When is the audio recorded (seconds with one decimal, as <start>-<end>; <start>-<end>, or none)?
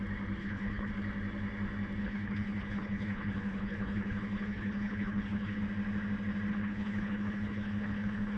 0.0-0.4; 0.9-2.0; 5.6-6.5